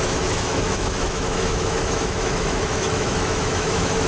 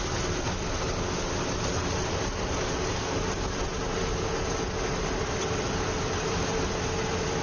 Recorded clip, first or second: second